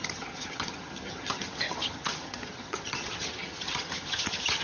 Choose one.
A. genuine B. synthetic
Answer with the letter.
B